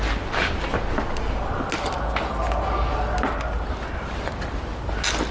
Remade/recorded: recorded